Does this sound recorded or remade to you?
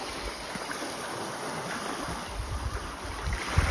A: recorded